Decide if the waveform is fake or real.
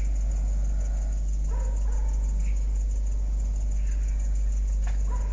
real